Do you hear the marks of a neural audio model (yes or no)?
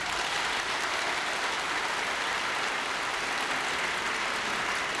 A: no